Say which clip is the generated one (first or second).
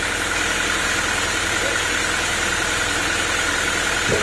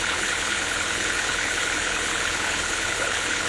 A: second